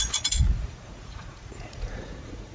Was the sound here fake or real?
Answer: fake